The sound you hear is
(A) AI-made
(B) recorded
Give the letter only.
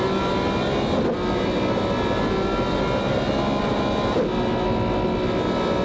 B